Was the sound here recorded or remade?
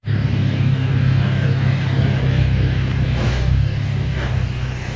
remade